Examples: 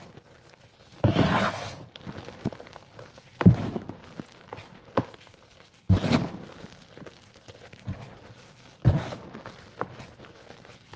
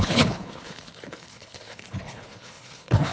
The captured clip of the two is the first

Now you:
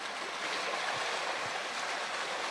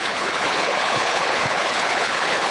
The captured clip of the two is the first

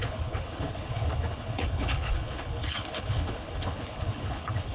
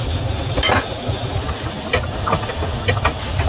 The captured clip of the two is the second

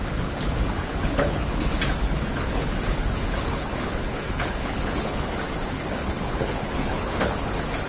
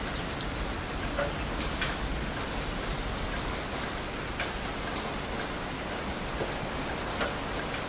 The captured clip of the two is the second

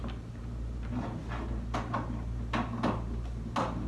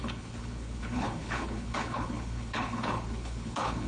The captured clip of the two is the first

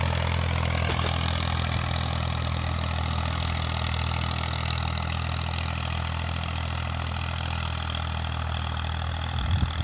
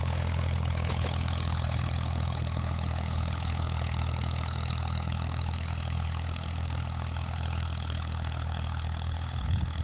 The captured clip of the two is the first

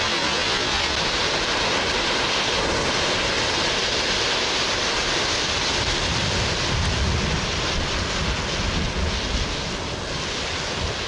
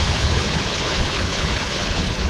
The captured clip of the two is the first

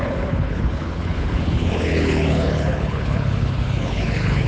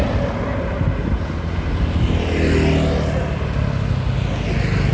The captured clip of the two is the second